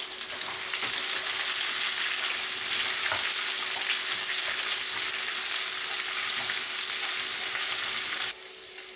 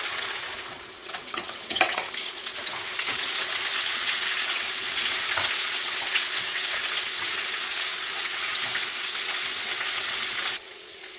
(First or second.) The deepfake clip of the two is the second